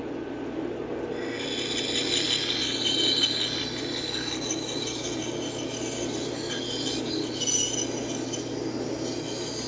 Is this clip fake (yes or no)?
no